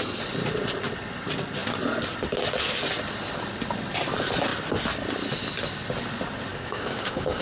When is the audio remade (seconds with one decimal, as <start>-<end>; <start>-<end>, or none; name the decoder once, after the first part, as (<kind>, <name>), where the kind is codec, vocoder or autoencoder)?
6.5-7.4 (codec, DAC)